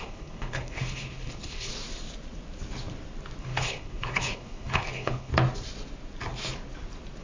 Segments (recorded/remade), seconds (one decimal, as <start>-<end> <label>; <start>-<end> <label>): 0.0-1.7 remade; 1.7-3.4 recorded; 3.4-5.3 remade; 5.3-7.2 recorded